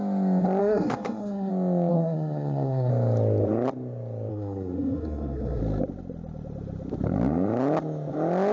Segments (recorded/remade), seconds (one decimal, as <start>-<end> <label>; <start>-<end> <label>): 0.0-0.6 recorded; 0.6-1.5 remade; 1.5-1.9 recorded; 1.9-2.9 remade; 2.9-4.3 recorded; 4.3-5.6 remade; 5.6-8.5 recorded